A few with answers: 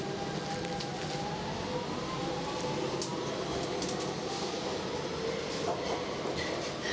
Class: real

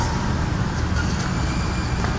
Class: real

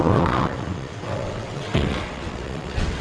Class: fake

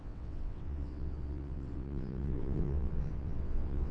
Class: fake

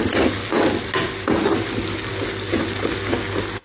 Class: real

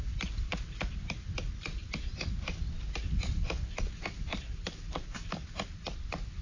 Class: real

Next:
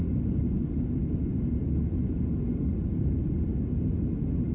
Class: real